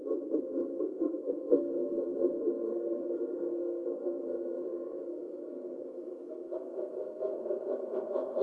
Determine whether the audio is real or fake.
fake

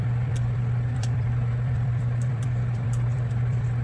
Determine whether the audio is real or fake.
fake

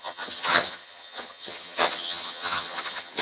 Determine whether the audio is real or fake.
fake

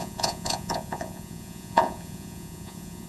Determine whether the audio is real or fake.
fake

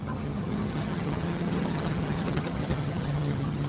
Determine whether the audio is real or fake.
fake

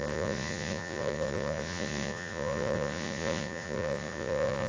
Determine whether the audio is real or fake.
fake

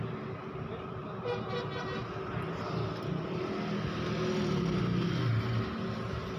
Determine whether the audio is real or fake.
real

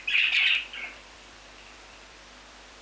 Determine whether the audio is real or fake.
real